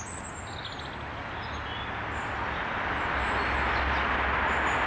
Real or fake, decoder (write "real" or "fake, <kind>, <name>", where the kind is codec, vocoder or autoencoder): real